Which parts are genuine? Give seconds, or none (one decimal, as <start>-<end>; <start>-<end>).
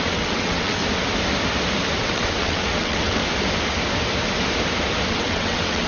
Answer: 0.8-2.0; 3.2-5.1